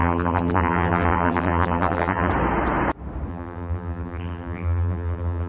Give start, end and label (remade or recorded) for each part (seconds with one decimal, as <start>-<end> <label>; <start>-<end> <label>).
0.0-2.3 remade; 2.3-3.3 recorded; 3.3-5.5 remade